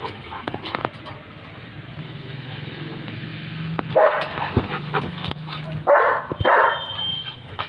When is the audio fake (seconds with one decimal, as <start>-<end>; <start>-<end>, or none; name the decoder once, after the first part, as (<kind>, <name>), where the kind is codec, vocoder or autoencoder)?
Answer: 0.0-0.8 (codec, SNAC); 2.0-5.6; 7.0-7.7